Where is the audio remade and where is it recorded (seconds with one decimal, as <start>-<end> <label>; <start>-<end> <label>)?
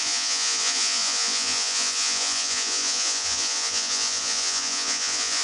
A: 0.0-5.4 remade